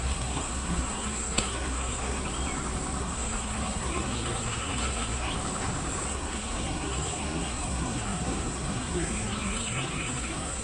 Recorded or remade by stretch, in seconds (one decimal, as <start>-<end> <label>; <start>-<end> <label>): 0.0-2.2 remade; 2.2-3.0 recorded; 3.0-5.3 remade; 5.3-6.1 recorded; 6.1-10.6 remade